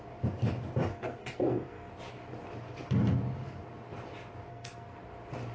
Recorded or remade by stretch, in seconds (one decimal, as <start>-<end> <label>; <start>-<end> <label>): 0.0-0.9 recorded; 0.9-1.9 remade; 1.9-4.5 recorded; 4.5-5.0 remade; 5.0-5.5 recorded

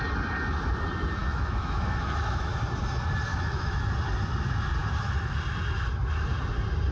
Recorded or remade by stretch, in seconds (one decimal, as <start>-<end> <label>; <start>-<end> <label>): 0.0-1.2 recorded; 1.2-2.5 remade; 2.5-3.3 recorded; 3.3-3.8 remade; 3.8-6.9 recorded

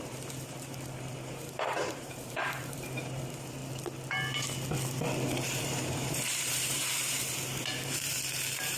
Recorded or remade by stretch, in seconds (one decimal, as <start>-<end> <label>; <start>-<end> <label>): 0.0-3.6 remade; 3.6-5.6 recorded; 5.6-8.8 remade

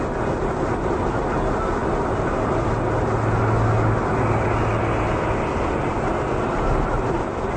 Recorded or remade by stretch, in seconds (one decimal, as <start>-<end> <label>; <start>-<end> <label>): 0.0-7.6 recorded

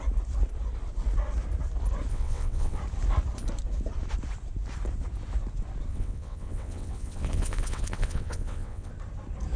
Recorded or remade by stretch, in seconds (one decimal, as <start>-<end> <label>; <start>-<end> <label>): 0.0-2.1 recorded; 2.1-2.8 remade; 2.8-5.9 recorded; 5.9-8.9 remade; 8.9-9.6 recorded

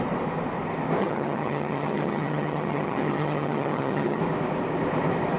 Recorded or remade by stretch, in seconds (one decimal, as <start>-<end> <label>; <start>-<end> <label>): 0.0-1.0 recorded; 1.0-4.2 remade; 4.2-5.4 recorded

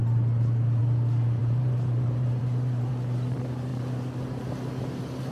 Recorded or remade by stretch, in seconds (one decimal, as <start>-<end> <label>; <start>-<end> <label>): 0.0-1.4 recorded; 1.4-2.9 remade; 2.9-5.3 recorded

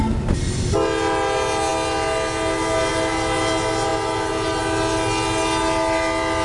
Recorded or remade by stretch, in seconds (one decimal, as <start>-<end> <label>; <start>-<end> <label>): 0.0-6.4 recorded